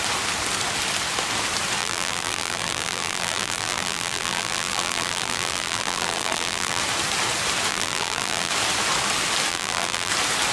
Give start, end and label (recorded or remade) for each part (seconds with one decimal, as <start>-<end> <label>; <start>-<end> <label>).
0.0-1.8 recorded; 1.8-6.8 remade; 6.8-7.7 recorded; 7.7-8.5 remade; 8.5-9.5 recorded; 9.5-10.1 remade; 10.1-10.5 recorded